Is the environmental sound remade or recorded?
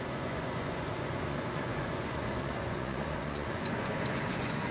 remade